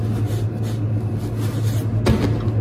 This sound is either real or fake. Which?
real